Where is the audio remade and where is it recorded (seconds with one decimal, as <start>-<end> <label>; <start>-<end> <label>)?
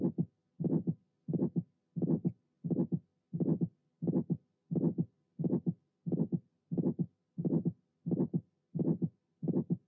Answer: 0.0-9.9 recorded